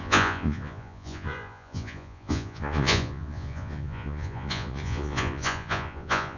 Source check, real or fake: fake